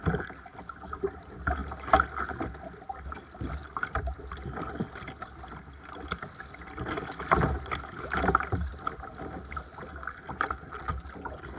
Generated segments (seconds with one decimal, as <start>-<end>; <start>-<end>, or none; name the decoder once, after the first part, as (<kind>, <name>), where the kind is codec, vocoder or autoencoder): none